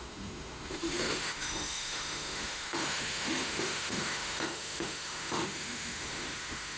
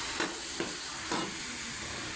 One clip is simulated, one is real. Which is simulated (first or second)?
first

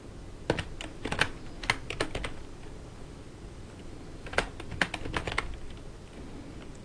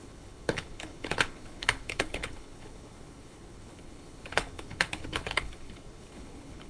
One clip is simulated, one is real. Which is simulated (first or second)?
second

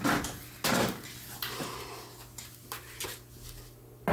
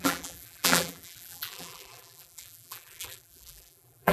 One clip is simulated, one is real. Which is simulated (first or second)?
second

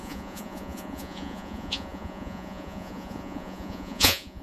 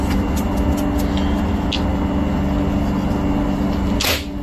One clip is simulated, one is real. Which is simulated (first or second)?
first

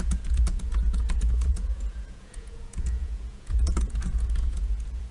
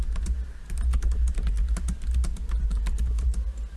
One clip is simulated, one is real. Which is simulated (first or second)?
first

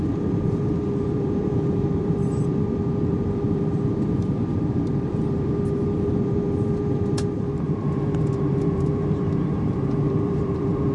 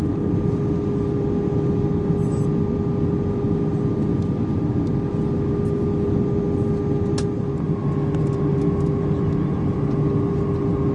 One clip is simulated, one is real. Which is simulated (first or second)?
first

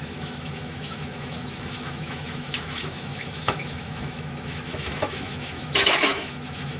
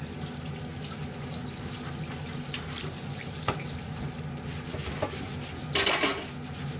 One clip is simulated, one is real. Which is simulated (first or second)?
first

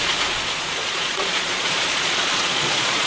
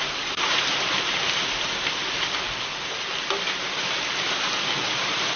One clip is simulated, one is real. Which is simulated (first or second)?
first